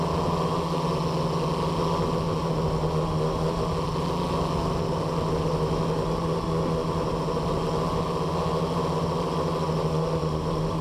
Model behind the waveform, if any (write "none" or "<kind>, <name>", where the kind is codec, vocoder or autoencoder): none